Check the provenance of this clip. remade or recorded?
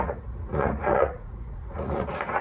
remade